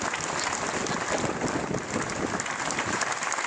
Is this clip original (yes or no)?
yes